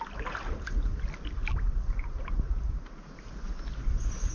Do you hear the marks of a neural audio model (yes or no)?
no